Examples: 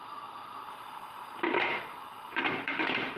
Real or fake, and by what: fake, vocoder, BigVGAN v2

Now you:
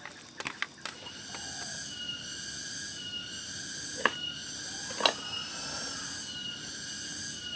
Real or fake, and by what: real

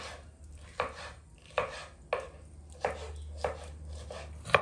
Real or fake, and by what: real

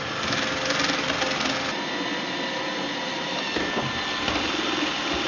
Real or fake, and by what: real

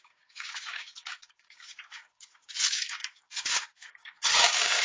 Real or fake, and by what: fake, codec, DAC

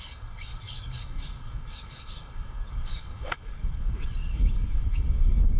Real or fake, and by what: fake, codec, DAC